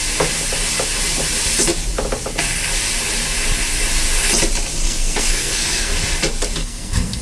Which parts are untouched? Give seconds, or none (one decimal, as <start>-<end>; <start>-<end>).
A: 0.0-4.8; 5.9-6.6

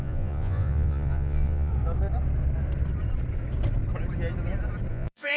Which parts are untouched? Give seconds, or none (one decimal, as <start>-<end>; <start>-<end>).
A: 1.7-4.9

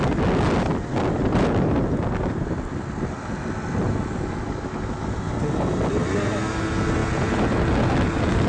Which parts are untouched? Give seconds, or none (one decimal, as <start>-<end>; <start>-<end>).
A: 0.0-8.5

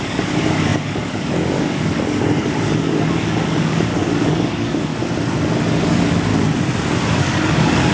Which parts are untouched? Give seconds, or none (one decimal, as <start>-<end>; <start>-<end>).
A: 4.9-5.8; 6.3-7.2

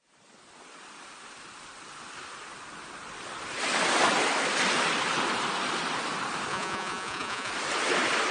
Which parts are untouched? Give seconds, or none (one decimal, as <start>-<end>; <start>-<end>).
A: 0.0-6.5; 7.5-8.3